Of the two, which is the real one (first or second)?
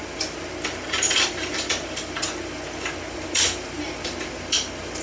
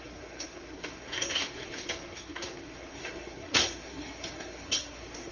first